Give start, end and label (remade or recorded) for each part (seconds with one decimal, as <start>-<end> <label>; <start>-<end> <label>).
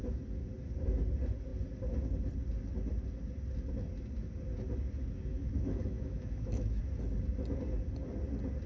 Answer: 0.0-5.3 recorded; 5.3-6.8 remade; 6.8-8.7 recorded